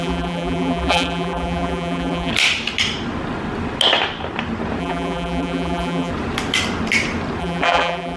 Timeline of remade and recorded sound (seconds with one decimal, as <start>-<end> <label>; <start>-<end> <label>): 0.0-2.3 remade; 2.3-4.8 recorded; 4.8-6.1 remade; 6.1-7.4 recorded; 7.4-8.2 remade